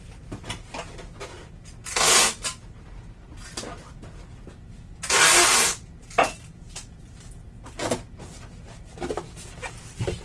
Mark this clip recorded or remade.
recorded